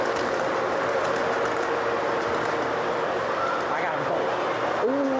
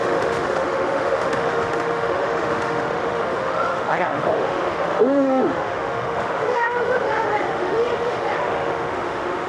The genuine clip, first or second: first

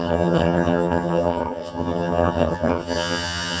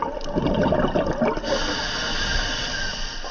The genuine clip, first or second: second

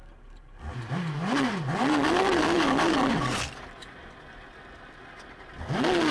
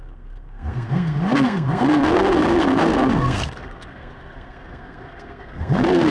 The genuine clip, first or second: first